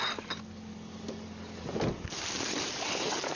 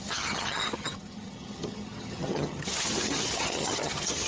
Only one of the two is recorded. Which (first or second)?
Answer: first